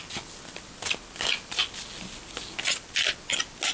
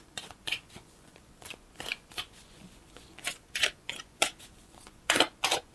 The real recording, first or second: first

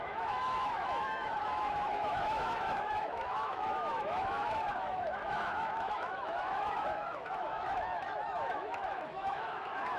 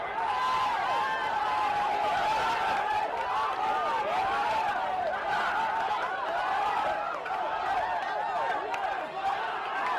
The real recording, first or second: second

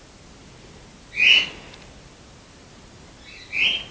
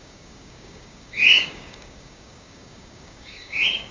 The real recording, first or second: first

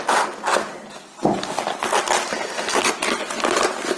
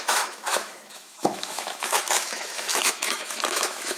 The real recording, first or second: first